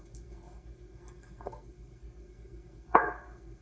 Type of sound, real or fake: fake